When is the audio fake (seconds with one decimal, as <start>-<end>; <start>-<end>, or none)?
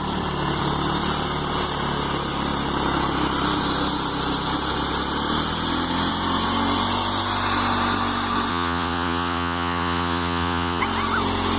8.5-10.8